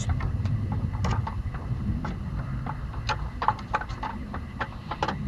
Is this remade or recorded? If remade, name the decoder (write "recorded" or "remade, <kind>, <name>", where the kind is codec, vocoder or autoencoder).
recorded